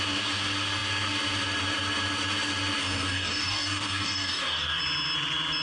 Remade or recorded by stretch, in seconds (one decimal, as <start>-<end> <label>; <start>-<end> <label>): 0.0-2.8 recorded; 2.8-4.8 remade; 4.8-5.6 recorded